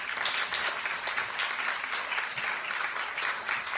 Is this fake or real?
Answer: real